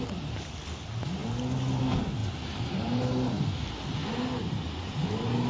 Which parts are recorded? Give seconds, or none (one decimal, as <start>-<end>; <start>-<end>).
0.0-5.5